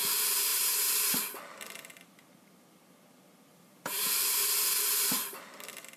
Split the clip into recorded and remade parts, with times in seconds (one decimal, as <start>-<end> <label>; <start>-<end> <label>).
0.0-3.5 recorded; 3.5-4.2 remade; 4.2-5.2 recorded; 5.2-6.0 remade